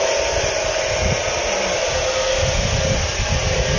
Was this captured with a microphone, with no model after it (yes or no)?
yes